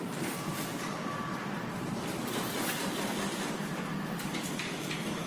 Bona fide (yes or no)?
no